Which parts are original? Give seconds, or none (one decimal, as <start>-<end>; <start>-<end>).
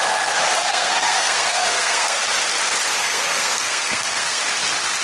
0.0-0.7; 2.2-3.0; 4.4-5.0